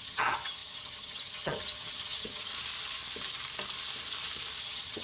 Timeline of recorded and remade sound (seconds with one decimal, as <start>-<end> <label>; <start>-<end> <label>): 0.0-2.5 remade; 2.5-4.6 recorded; 4.6-5.0 remade

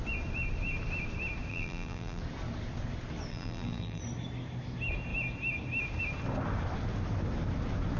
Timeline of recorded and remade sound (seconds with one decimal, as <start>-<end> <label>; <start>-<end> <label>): 0.0-1.5 recorded; 1.5-2.2 remade; 2.2-3.3 recorded; 3.3-4.0 remade; 4.0-8.0 recorded

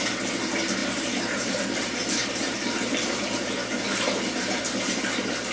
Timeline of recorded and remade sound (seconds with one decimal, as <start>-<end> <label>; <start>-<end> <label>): 0.0-0.8 recorded; 0.8-1.6 remade; 1.6-2.2 recorded; 2.2-4.6 remade; 4.6-5.5 recorded